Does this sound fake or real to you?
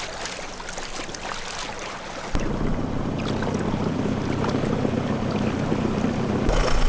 real